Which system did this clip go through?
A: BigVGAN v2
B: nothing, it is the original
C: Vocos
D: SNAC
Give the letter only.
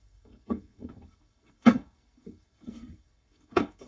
D